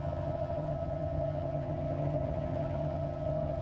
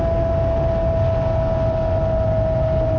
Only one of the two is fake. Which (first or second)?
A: first